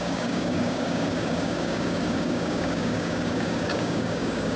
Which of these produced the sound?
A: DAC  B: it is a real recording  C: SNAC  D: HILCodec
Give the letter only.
A